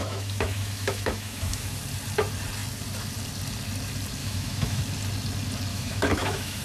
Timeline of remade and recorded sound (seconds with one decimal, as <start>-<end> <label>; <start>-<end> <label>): 0.0-1.8 remade; 1.8-4.2 recorded; 4.2-4.8 remade; 4.8-5.7 recorded; 5.7-6.6 remade